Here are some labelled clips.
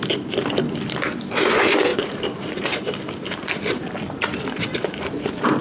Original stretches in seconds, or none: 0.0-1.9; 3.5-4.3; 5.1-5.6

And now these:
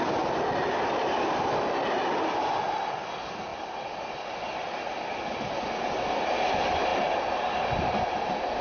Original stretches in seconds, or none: 0.0-8.6